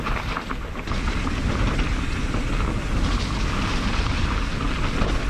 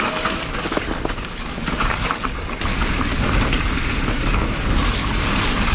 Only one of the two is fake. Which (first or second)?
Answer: second